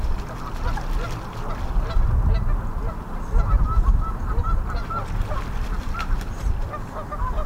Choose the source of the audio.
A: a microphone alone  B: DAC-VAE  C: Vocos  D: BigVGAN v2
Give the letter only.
A